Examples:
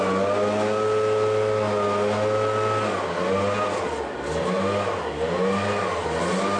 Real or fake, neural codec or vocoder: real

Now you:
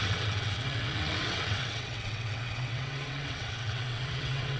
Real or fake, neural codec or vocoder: fake, vocoder, WaveNeXt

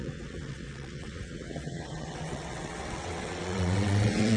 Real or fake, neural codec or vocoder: fake, vocoder, WaveNeXt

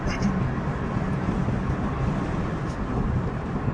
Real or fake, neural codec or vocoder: real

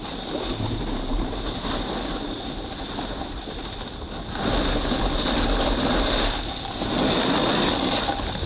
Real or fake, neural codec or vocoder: real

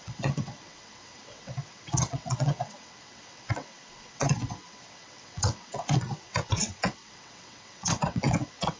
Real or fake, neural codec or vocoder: fake, vocoder, WaveNeXt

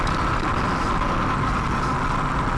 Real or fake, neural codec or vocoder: real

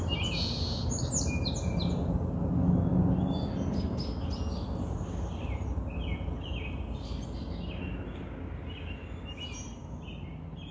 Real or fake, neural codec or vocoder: real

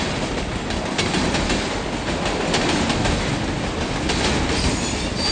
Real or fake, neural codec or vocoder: real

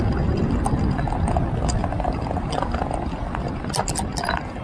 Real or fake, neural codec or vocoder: real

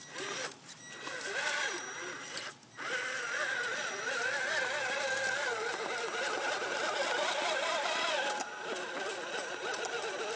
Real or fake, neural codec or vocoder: real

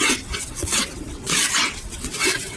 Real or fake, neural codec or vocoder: fake, vocoder, WaveNeXt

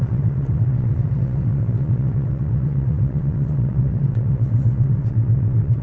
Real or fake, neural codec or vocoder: fake, vocoder, WaveNeXt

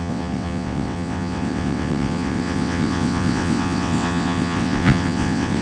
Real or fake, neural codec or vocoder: fake, vocoder, WaveNeXt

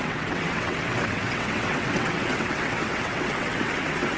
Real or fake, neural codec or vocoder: fake, vocoder, WaveNeXt